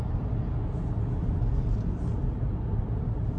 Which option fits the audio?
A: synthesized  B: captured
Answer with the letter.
B